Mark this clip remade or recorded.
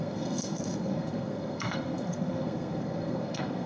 remade